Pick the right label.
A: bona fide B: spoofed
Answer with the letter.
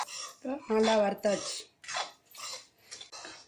A